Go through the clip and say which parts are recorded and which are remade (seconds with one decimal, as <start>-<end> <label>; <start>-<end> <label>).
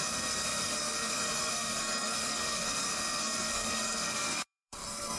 0.0-5.2 remade